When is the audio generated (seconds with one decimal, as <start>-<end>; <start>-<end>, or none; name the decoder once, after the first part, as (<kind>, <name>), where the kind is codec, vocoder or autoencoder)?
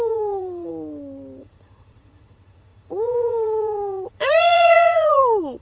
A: 0.0-0.7 (vocoder, Vocos); 1.4-5.6